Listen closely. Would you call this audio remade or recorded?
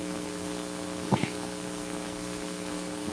remade